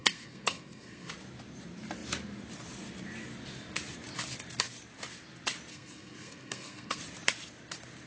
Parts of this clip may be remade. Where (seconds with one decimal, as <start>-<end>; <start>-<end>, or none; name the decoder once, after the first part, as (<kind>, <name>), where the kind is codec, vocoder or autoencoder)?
0.0-1.1 (codec, SNAC); 5.7-7.0